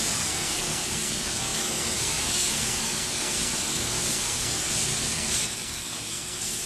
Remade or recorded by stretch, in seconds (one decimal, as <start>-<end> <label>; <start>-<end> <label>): 0.0-6.7 remade